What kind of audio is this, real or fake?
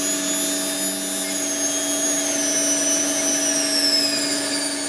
real